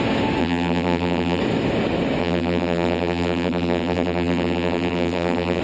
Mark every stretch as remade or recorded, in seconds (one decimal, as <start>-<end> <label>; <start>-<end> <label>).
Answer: 0.0-0.4 recorded; 0.4-1.4 remade; 1.4-2.2 recorded; 2.2-5.6 remade